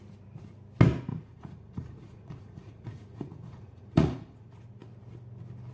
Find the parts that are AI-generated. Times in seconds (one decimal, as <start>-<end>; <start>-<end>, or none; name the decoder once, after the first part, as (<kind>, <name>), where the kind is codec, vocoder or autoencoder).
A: 1.1-4.5 (vocoder, Vocos)